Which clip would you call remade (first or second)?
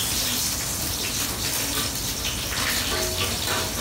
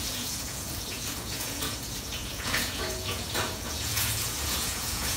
second